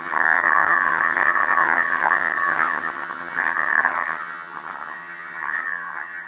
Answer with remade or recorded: remade